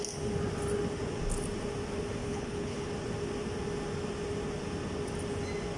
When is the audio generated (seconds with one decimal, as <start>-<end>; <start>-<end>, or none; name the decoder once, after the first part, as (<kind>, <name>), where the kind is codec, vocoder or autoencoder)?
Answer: 2.2-2.9 (codec, HILCodec)